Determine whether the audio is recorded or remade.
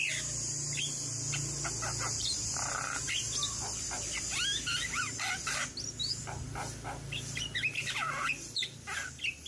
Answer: recorded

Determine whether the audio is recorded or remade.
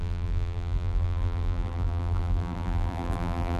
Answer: remade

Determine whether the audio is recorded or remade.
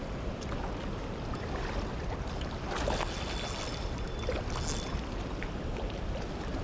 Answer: recorded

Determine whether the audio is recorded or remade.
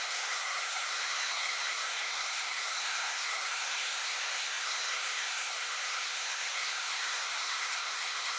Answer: remade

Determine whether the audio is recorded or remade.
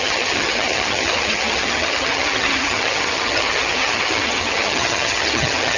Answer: remade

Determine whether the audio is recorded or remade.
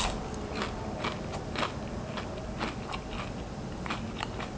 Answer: recorded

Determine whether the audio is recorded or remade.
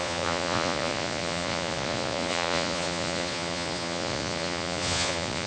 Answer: remade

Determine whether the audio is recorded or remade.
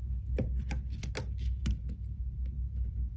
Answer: recorded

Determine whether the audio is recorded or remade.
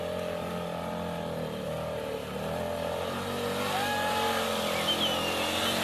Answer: recorded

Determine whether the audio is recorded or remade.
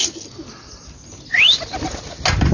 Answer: recorded